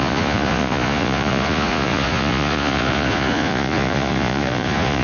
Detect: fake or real fake